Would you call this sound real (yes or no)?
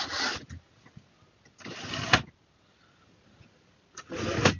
yes